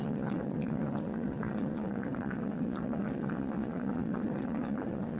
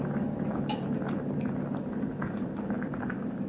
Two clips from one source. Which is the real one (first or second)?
second